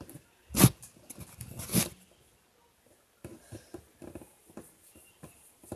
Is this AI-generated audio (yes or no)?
no